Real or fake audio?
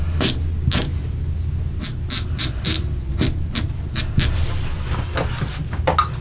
real